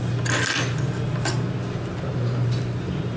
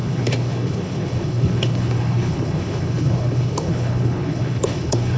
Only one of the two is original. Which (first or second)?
first